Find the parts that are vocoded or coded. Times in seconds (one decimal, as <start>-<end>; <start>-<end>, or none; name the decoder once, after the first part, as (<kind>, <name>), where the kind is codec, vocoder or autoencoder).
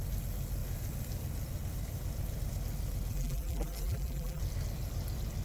3.1-4.4 (vocoder, BigVGAN v2)